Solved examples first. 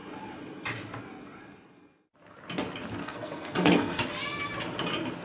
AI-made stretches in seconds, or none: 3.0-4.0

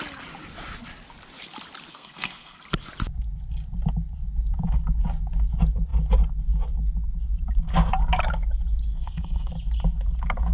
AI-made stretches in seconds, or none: 1.9-2.6; 8.9-9.5

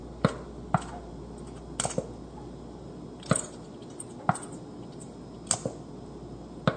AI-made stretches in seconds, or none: none

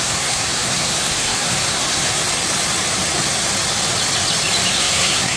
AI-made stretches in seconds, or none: 0.0-2.2; 4.7-5.4